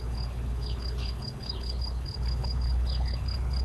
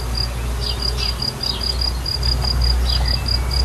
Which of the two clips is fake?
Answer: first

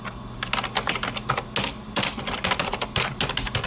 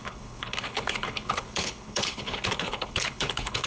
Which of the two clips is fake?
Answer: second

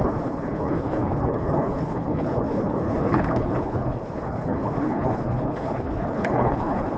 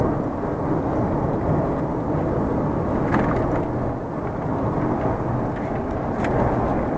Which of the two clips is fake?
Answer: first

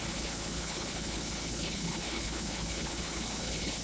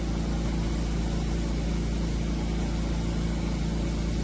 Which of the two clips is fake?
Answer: first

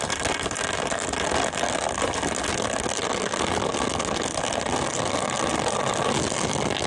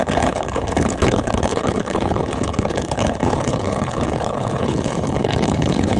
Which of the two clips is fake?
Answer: second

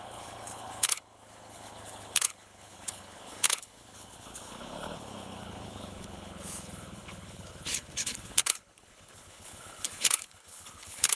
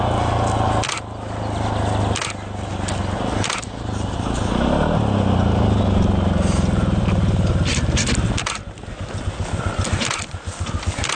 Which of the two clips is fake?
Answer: first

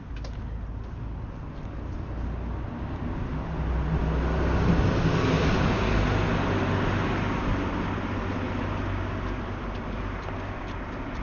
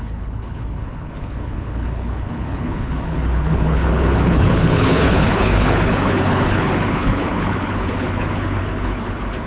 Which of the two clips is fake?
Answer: second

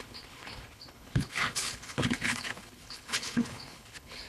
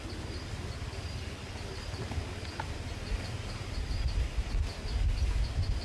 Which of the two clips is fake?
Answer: first